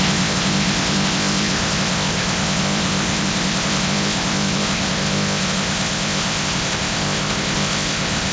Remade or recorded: remade